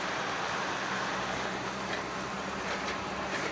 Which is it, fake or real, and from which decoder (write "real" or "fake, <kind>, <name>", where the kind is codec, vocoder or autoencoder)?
fake, vocoder, BigVGAN v2